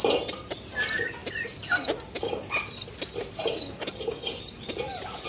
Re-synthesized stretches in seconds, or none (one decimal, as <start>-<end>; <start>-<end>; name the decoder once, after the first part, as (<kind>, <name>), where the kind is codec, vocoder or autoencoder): none